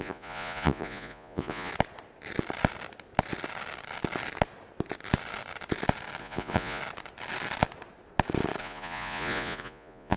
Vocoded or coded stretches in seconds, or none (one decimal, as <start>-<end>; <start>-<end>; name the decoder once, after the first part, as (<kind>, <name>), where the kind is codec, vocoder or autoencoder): 0.0-1.7 (vocoder, Vocos); 6.2-6.8; 8.6-10.2